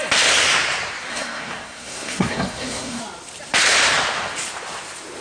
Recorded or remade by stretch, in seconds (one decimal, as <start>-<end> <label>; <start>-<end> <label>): 0.0-1.1 recorded; 1.1-3.0 remade; 3.0-5.2 recorded